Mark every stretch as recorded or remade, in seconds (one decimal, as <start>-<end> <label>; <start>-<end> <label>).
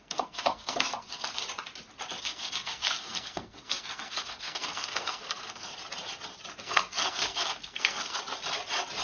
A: 0.0-1.4 remade; 1.4-2.2 recorded; 2.2-5.7 remade; 5.7-6.6 recorded; 6.6-8.2 remade; 8.2-9.0 recorded